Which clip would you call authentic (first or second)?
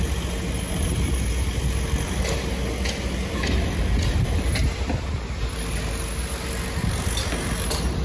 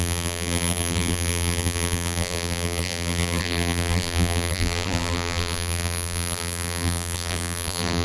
first